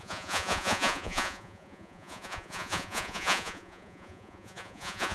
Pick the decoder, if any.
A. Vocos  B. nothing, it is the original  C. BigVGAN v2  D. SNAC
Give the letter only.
A